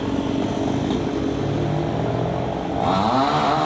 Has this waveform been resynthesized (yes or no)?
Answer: no